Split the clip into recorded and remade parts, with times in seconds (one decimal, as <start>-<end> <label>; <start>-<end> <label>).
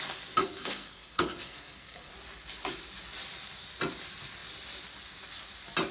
0.0-0.4 recorded; 0.4-2.1 remade; 2.1-5.9 recorded